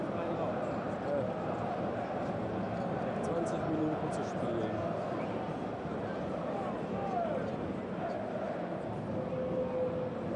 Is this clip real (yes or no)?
yes